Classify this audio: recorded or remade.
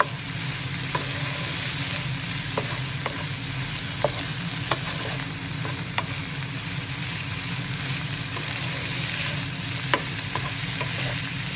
recorded